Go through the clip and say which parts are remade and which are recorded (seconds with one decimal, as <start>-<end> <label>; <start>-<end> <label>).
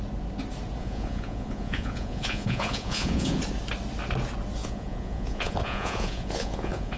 0.0-0.8 recorded; 0.8-3.4 remade; 3.4-4.6 recorded; 4.6-7.0 remade